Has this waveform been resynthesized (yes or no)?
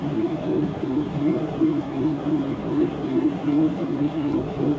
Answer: yes